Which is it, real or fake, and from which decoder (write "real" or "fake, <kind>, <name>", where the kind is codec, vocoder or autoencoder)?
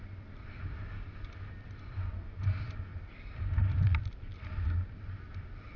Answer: real